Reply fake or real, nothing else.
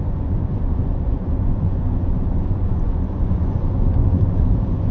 fake